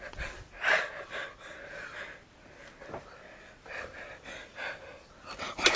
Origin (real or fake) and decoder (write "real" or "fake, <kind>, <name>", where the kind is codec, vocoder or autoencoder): real